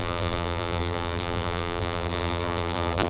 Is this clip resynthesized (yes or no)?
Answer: yes